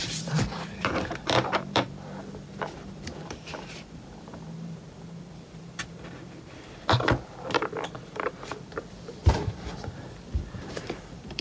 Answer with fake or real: fake